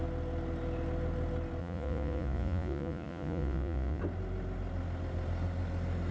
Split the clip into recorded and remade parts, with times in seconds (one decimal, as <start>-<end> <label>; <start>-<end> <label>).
0.0-1.6 recorded; 1.6-4.0 remade; 4.0-6.1 recorded